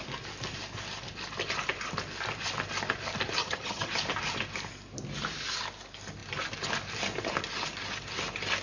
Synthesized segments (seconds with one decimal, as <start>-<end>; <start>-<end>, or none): 3.4-3.9